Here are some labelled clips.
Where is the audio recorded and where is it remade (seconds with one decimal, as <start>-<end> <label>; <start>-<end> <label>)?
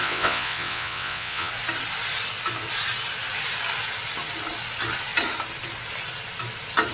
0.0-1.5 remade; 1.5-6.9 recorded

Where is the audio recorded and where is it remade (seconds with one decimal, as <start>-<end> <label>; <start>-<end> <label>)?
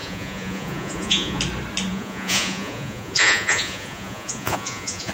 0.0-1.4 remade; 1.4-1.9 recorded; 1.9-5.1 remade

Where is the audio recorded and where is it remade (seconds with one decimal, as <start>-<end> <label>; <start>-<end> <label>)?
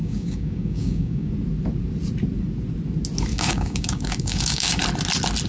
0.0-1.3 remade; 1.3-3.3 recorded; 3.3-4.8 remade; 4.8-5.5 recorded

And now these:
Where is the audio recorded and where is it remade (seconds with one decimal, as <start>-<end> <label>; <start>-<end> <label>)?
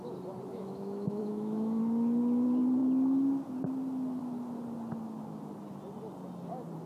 0.0-0.5 recorded; 0.5-1.8 remade; 1.8-6.9 recorded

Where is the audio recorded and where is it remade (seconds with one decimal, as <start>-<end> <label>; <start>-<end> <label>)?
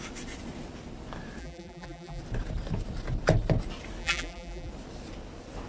0.0-1.4 recorded; 1.4-2.2 remade; 2.2-4.0 recorded; 4.0-4.7 remade; 4.7-5.7 recorded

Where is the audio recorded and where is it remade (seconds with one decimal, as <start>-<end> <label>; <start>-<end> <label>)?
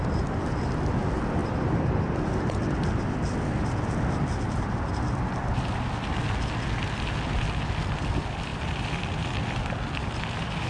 0.0-1.4 recorded; 1.4-3.0 remade; 3.0-8.5 recorded; 8.5-9.6 remade; 9.6-10.7 recorded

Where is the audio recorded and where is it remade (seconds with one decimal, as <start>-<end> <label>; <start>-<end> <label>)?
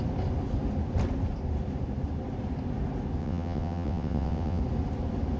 0.0-3.2 recorded; 3.2-4.6 remade; 4.6-5.4 recorded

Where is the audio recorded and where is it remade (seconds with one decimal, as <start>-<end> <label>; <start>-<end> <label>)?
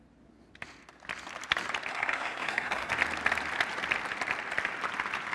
0.0-1.9 recorded; 1.9-2.9 remade; 2.9-5.3 recorded